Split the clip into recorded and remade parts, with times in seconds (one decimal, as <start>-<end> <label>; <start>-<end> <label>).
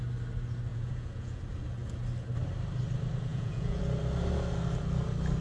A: 0.0-0.7 recorded; 0.7-1.4 remade; 1.4-3.3 recorded; 3.3-3.8 remade; 3.8-5.4 recorded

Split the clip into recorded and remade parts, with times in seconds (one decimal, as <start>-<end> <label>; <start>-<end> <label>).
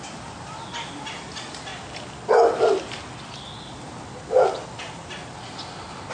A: 0.0-6.1 recorded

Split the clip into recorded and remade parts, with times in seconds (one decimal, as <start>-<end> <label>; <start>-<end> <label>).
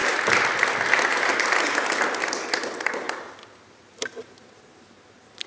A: 0.0-5.5 recorded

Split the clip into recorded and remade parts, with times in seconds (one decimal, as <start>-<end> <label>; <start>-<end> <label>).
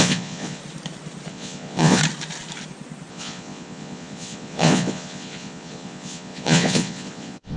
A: 0.0-0.6 remade; 0.6-1.3 recorded; 1.3-2.0 remade; 2.0-3.1 recorded; 3.1-7.6 remade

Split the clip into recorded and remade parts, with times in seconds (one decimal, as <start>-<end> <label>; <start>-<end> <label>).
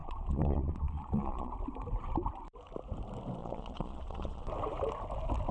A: 0.0-1.5 remade; 1.5-3.4 recorded; 3.4-4.5 remade; 4.5-5.5 recorded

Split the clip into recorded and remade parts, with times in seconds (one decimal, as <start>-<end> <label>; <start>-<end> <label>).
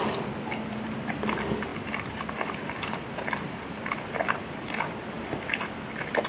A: 0.0-6.3 recorded